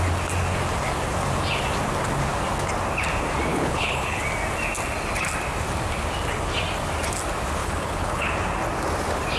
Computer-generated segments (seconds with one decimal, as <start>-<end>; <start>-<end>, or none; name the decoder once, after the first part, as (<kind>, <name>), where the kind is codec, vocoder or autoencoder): 3.5-4.2 (codec, HILCodec); 7.6-8.3

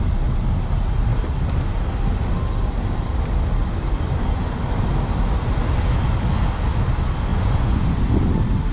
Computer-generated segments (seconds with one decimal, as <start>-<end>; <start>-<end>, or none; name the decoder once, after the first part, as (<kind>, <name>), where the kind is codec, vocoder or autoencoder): 7.3-8.0 (vocoder, Vocos)

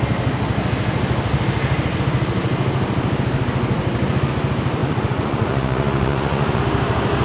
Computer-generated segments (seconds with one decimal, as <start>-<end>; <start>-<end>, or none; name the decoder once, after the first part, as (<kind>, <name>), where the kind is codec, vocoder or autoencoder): 4.8-6.6 (vocoder, Vocos)

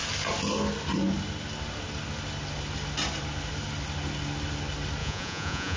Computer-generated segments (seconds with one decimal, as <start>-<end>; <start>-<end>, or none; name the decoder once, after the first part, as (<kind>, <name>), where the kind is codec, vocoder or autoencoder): 5.0-5.8 (vocoder, Vocos)